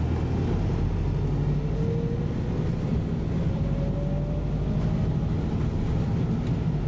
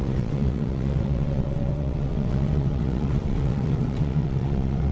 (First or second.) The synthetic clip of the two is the second